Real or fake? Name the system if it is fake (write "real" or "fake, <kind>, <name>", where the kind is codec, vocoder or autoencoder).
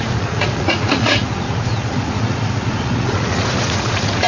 fake, vocoder, Vocos